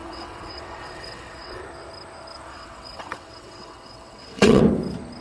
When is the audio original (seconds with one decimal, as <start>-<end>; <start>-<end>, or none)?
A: 1.6-2.5; 4.6-5.2